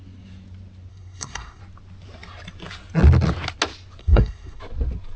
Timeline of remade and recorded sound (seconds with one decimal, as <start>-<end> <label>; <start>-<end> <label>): 0.0-0.9 recorded; 0.9-1.6 remade; 1.6-4.0 recorded; 4.0-4.6 remade; 4.6-5.2 recorded